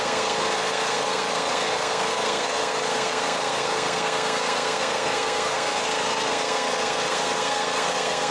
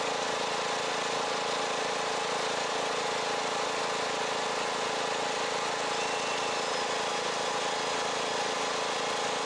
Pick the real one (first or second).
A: second